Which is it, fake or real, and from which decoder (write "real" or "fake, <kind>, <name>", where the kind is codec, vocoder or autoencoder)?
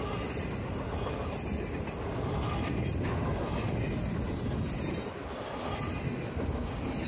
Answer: real